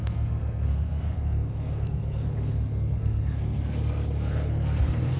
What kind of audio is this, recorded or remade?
remade